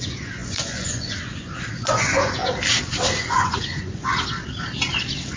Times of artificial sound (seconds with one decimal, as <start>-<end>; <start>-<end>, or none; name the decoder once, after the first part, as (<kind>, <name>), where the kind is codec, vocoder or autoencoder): 0.0-2.4 (vocoder, Vocos); 3.2-4.1